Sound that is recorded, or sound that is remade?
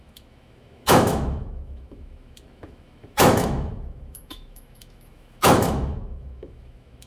remade